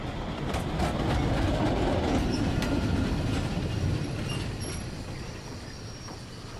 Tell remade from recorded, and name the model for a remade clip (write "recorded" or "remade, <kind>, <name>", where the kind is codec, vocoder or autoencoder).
recorded